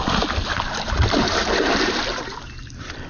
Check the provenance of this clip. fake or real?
fake